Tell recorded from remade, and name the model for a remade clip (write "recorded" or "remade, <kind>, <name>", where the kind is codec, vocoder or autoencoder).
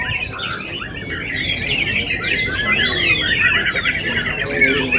recorded